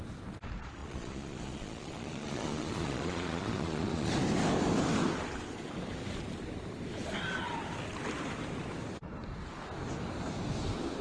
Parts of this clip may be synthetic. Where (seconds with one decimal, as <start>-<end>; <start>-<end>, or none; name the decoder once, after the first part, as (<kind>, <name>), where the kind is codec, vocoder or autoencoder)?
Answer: 0.8-4.1 (vocoder, Vocos)